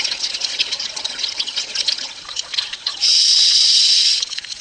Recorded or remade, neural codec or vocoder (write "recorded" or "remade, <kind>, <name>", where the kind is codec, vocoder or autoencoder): remade, vocoder, Vocos